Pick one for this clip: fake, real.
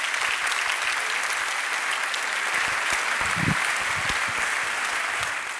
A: real